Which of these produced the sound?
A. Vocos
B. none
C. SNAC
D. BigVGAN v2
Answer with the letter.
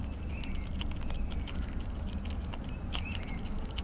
B